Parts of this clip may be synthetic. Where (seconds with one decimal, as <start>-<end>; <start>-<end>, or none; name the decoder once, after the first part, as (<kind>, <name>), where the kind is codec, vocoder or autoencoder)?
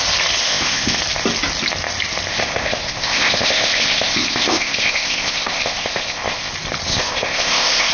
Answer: 0.4-1.0 (codec, ZipCodec); 2.3-6.5; 6.9-7.9